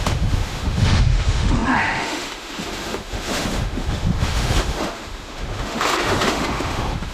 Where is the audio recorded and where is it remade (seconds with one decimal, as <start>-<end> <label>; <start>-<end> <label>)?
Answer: 0.0-7.1 remade